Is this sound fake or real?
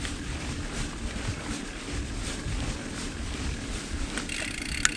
real